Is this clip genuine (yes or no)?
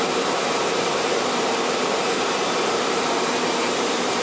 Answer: no